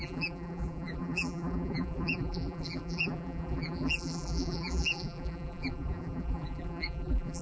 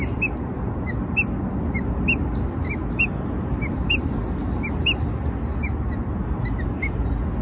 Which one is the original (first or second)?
second